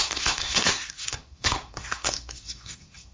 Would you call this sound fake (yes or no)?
yes